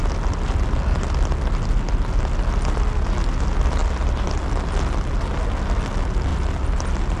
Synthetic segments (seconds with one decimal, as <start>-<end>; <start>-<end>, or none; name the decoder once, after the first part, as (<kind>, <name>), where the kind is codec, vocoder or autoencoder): 3.8-4.5 (vocoder, BigVGAN v2); 6.3-7.2